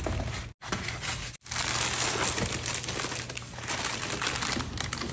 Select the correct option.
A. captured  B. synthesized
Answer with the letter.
A